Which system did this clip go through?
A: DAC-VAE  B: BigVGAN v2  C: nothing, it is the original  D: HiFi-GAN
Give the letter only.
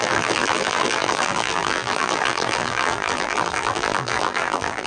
B